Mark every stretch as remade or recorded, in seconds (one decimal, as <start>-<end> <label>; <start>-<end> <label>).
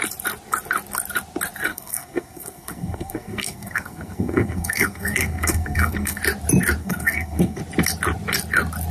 0.0-1.7 recorded; 1.7-6.2 remade; 6.2-6.8 recorded; 6.8-7.6 remade; 7.6-8.9 recorded